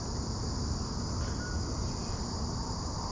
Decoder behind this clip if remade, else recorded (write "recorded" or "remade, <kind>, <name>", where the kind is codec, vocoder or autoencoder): recorded